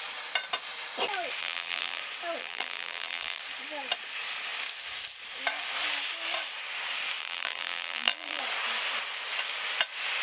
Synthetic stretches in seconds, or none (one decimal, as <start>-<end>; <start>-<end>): 1.4-2.0; 2.4-3.4; 7.2-8.4